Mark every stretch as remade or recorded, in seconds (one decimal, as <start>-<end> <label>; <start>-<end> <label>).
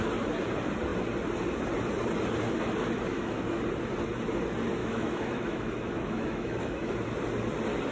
0.0-3.1 recorded; 3.1-3.6 remade; 3.6-4.8 recorded; 4.8-6.9 remade; 6.9-7.9 recorded